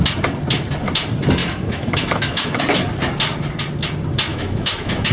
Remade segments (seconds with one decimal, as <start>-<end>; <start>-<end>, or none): 1.4-2.6; 4.3-5.1